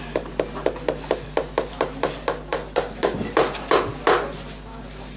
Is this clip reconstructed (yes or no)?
no